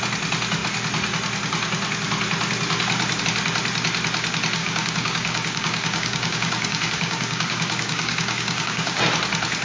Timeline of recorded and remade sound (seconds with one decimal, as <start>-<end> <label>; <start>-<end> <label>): 0.0-4.6 recorded; 4.6-9.0 remade; 9.0-9.6 recorded